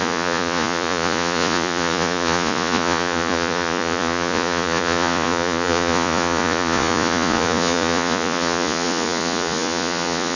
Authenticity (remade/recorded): remade